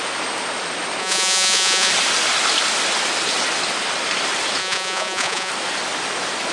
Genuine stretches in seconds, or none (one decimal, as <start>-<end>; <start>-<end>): 0.0-1.0; 1.9-4.6; 5.5-6.5

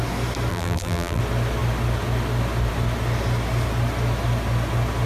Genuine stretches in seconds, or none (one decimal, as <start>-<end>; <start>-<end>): 0.0-0.5; 1.2-5.1